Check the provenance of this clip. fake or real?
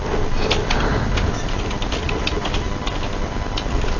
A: real